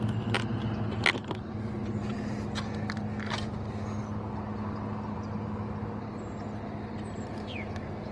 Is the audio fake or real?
real